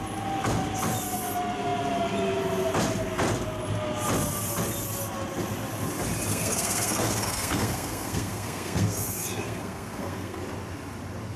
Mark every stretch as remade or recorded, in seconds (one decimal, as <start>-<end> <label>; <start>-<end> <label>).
0.0-6.3 recorded; 6.3-10.4 remade; 10.4-11.4 recorded